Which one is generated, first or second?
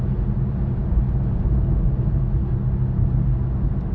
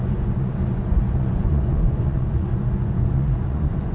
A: second